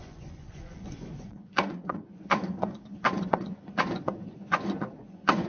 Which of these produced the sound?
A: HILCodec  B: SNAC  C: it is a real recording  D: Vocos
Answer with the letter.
D